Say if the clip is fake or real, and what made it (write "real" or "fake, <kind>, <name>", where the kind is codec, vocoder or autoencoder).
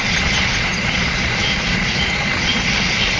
fake, vocoder, Vocos